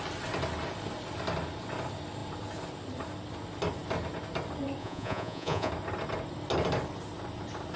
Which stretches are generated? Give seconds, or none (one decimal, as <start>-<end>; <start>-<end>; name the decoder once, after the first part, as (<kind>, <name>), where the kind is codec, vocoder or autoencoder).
4.8-5.7 (vocoder, Vocos)